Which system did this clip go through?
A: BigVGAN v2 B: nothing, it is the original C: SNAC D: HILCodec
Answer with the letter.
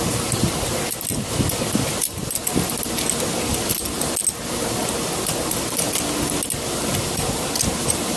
B